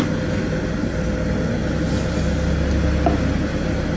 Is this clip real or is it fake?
real